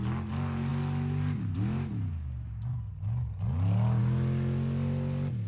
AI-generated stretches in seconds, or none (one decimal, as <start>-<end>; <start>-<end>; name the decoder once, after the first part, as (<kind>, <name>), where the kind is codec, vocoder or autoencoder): none